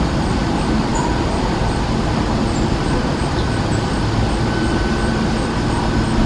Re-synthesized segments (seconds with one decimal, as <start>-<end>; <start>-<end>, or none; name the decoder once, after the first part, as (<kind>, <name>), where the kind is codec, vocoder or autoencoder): none